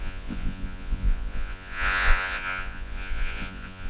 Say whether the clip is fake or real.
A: fake